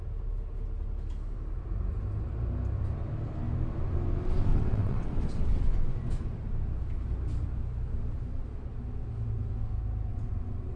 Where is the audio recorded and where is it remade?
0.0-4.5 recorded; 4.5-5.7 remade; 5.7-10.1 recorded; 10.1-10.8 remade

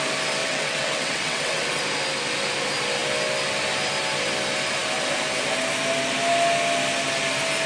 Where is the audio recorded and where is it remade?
0.0-0.4 recorded; 0.4-1.8 remade; 1.8-7.7 recorded

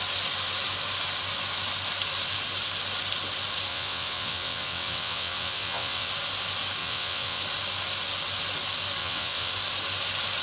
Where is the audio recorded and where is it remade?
0.0-3.7 recorded; 3.7-6.1 remade; 6.1-6.8 recorded; 6.8-7.4 remade; 7.4-9.0 recorded; 9.0-9.5 remade; 9.5-10.4 recorded

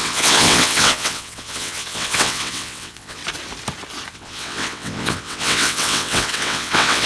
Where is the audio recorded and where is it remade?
0.0-3.2 remade; 3.2-4.1 recorded; 4.1-7.1 remade

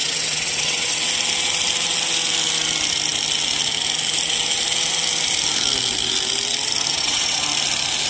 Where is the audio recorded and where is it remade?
0.0-1.1 remade; 1.1-6.9 recorded; 6.9-7.4 remade; 7.4-8.1 recorded

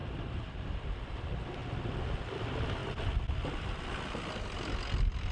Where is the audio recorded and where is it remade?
0.0-5.3 recorded

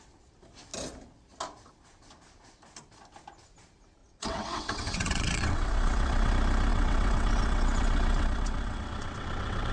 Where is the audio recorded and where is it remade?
0.0-4.0 recorded; 4.0-6.3 remade; 6.3-6.7 recorded; 6.7-9.7 remade

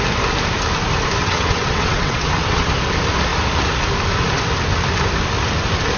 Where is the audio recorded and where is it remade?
0.0-1.2 recorded; 1.2-2.7 remade; 2.7-6.0 recorded